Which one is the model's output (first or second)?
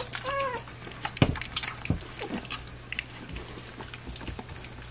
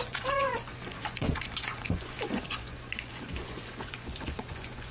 second